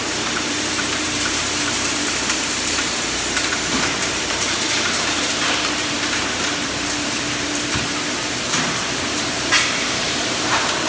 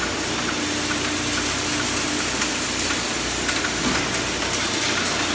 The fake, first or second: first